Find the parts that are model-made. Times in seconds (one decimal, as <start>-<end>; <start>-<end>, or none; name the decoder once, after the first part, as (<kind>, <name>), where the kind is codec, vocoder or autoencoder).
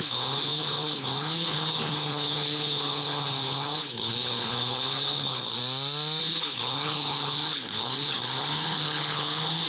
0.0-5.6 (codec, HILCodec); 6.2-9.7